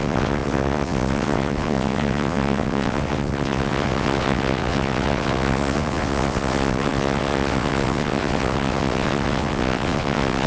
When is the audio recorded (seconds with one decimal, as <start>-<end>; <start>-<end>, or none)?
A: none